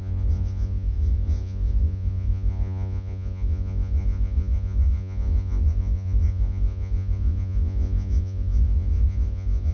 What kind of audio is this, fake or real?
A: fake